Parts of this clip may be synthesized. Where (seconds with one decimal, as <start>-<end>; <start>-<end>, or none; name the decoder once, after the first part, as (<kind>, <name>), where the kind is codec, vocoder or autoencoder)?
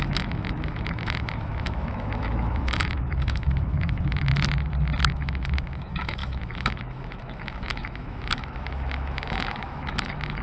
0.0-4.3 (autoencoder, DAC-VAE); 5.0-10.4